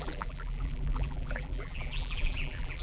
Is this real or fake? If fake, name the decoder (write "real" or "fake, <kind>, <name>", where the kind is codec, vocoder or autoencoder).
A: fake, vocoder, BigVGAN v2